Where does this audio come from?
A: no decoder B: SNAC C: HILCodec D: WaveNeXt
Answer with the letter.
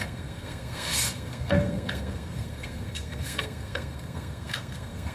B